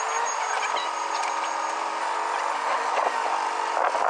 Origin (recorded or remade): recorded